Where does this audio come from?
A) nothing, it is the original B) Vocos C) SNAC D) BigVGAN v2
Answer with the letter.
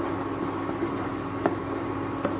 A